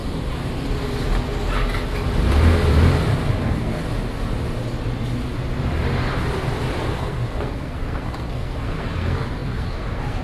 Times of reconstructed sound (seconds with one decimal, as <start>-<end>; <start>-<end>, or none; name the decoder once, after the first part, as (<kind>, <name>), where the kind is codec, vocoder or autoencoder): 3.4-3.8 (codec, SNAC); 6.8-10.2